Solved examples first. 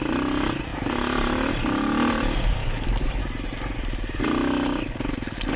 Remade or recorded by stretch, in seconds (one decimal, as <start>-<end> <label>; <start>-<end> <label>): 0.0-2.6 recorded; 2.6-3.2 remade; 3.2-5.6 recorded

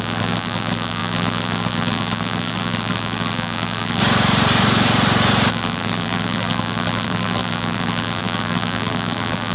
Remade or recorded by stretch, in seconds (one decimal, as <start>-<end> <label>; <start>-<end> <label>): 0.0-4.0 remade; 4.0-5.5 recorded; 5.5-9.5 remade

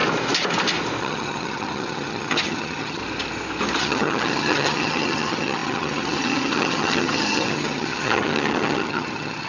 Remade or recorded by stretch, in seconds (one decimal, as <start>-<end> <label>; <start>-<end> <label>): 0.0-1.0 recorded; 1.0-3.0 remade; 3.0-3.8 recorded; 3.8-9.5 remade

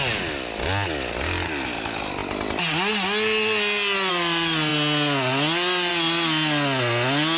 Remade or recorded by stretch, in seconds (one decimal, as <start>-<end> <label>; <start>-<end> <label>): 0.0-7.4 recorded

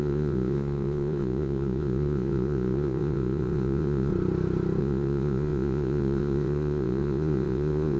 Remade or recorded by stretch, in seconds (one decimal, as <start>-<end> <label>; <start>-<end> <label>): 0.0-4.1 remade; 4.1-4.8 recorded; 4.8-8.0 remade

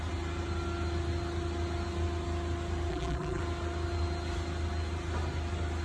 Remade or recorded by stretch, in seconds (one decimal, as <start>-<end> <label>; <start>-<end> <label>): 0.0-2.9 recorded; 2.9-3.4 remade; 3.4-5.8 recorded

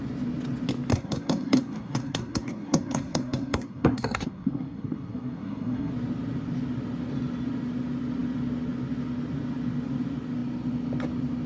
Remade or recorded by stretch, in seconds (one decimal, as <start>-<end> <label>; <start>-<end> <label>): 0.0-0.9 recorded; 0.9-5.9 remade; 5.9-11.5 recorded